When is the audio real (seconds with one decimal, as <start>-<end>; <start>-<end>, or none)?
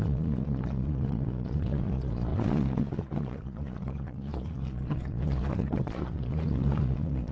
none